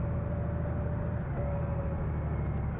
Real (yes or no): yes